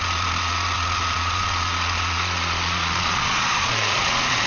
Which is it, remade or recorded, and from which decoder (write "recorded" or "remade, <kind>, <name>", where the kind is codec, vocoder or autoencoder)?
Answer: remade, vocoder, Vocos